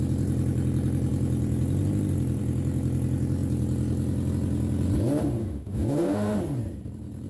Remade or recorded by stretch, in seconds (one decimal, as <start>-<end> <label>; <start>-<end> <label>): 0.0-5.4 recorded; 5.4-6.4 remade; 6.4-7.3 recorded